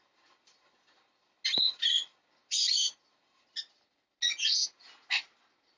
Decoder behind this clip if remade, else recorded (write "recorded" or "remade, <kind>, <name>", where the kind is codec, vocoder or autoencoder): recorded